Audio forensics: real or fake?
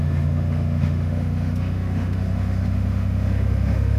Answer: fake